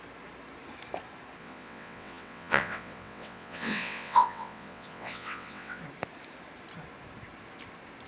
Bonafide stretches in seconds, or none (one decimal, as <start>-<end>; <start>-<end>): 0.0-1.4; 5.8-8.1